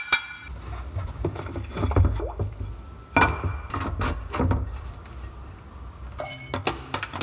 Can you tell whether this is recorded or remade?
recorded